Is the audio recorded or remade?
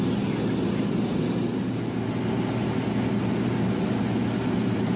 recorded